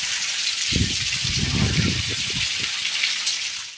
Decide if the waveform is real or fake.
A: real